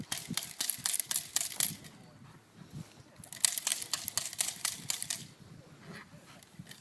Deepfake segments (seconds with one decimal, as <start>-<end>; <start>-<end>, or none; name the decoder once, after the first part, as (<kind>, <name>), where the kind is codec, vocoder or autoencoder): none